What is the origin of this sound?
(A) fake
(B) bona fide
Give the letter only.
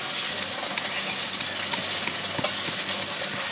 B